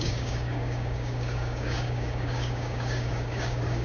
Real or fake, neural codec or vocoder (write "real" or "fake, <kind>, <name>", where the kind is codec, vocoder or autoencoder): fake, codec, DAC